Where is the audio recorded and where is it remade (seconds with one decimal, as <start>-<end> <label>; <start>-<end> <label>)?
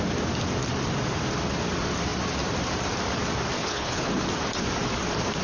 0.0-3.6 recorded; 3.6-4.1 remade; 4.1-5.4 recorded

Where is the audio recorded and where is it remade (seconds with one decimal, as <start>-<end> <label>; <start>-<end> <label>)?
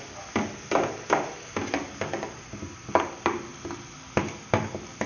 0.0-5.1 recorded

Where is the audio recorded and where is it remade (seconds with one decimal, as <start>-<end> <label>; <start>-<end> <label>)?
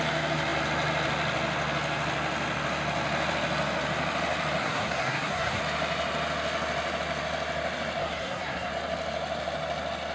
0.0-4.6 recorded; 4.6-5.6 remade; 5.6-8.0 recorded; 8.0-8.7 remade; 8.7-10.1 recorded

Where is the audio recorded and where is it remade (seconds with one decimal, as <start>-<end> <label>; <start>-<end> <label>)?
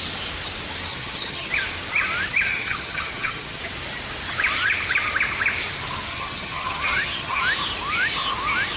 0.0-0.9 recorded; 0.9-1.5 remade; 1.5-2.5 recorded; 2.5-3.6 remade; 3.6-6.1 recorded; 6.1-7.4 remade; 7.4-8.8 recorded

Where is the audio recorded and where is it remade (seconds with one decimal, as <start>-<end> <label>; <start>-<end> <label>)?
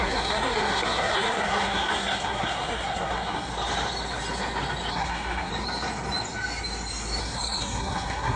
0.0-3.5 remade; 3.5-4.9 recorded; 4.9-5.5 remade; 5.5-7.2 recorded; 7.2-8.4 remade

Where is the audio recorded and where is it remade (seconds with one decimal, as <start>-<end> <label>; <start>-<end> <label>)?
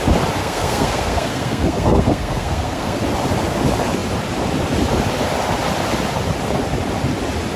0.0-0.4 recorded; 0.4-3.0 remade; 3.0-7.6 recorded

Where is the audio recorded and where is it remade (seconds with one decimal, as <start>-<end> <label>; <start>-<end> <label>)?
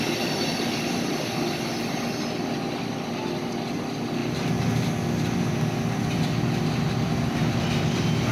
0.0-8.3 recorded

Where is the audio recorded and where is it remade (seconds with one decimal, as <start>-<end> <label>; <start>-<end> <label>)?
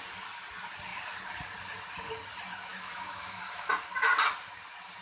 0.0-2.7 recorded; 2.7-3.7 remade; 3.7-5.0 recorded